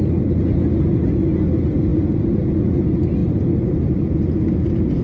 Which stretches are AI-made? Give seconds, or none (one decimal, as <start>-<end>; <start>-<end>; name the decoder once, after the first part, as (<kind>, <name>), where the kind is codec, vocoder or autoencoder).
1.9-2.6 (vocoder, BigVGAN v2); 3.2-4.2